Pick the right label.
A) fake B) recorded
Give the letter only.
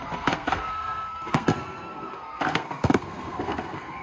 A